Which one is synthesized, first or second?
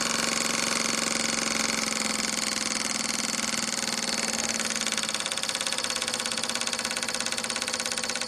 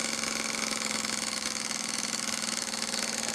second